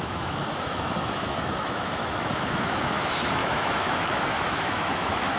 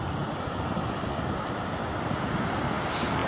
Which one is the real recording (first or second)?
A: second